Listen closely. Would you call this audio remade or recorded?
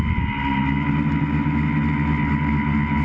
recorded